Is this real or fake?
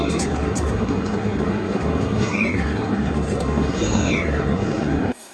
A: fake